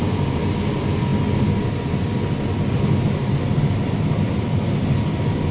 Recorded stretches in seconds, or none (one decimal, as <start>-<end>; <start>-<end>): 0.0-5.5